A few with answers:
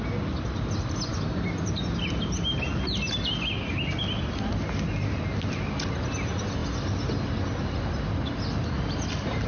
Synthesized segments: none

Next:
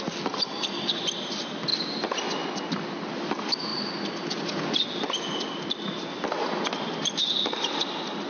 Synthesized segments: none